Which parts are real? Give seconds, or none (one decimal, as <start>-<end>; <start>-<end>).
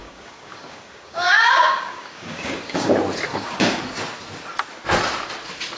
2.9-3.3; 3.8-5.8